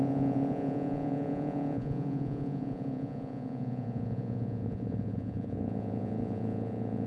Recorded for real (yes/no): no